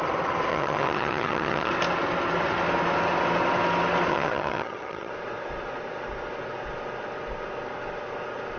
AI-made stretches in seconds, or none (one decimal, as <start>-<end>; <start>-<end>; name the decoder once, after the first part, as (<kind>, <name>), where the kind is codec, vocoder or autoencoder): 0.5-1.7 (vocoder, HiFi-GAN); 4.1-5.1